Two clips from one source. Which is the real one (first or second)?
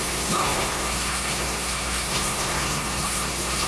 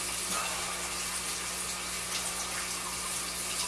second